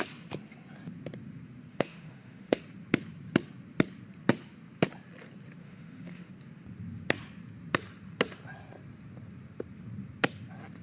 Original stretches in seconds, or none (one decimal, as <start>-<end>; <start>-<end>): 0.0-1.7; 2.6-5.6; 6.3-10.8